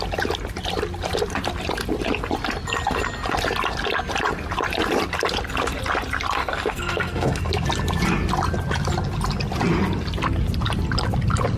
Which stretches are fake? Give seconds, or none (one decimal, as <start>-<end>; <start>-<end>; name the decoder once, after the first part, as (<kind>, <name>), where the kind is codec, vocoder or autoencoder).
6.4-7.5 (codec, SNAC)